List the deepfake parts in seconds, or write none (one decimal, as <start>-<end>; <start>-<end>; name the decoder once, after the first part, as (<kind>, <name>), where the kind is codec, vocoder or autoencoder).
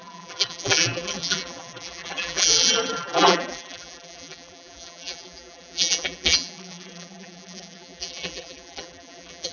0.0-9.5 (vocoder, BigVGAN v2)